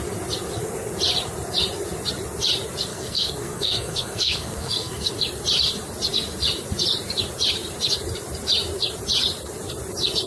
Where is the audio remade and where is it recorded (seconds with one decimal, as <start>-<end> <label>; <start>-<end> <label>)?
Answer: 0.0-2.9 recorded; 2.9-5.1 remade; 5.1-10.3 recorded